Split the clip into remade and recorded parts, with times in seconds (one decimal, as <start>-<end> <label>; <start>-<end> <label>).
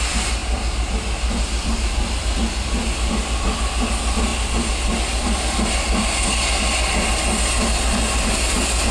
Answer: 0.0-8.9 recorded